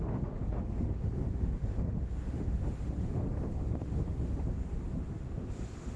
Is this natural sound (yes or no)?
no